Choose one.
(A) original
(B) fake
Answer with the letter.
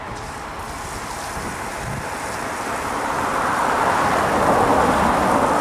A